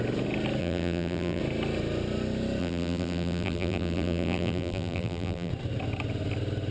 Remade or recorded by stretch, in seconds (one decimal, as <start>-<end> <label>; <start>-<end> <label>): 0.0-0.6 recorded; 0.6-1.4 remade; 1.4-2.6 recorded; 2.6-5.5 remade; 5.5-6.7 recorded